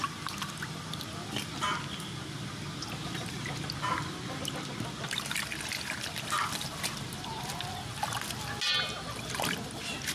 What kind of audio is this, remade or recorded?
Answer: recorded